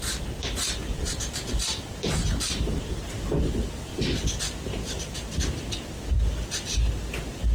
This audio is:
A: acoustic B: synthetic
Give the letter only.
A